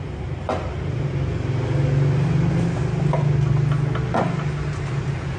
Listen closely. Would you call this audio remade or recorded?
recorded